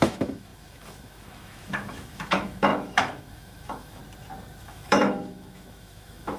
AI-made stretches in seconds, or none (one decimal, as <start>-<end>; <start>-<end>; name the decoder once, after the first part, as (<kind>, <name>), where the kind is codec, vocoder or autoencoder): 0.0-4.0 (autoencoder, DAC-VAE); 4.6-6.4